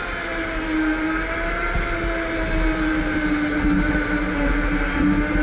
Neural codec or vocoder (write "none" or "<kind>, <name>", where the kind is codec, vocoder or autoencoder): none